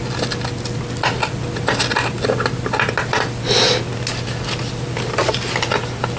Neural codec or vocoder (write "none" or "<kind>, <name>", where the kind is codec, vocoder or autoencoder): none